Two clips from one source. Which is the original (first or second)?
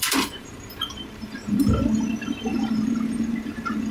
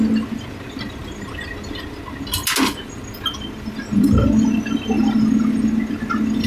second